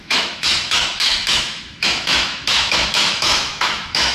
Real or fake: fake